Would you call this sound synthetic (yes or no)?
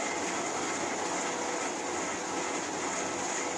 no